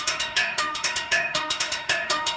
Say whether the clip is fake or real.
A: fake